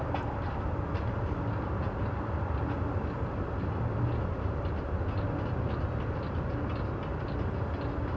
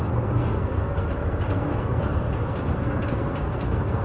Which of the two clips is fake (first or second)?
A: second